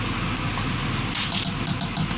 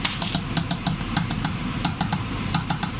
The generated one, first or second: second